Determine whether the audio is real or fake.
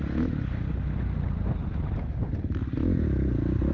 real